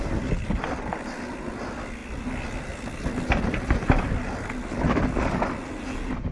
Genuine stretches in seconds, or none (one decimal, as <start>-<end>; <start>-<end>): 0.0-6.3